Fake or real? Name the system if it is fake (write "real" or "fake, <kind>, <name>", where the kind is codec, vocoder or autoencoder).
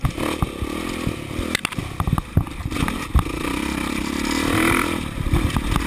real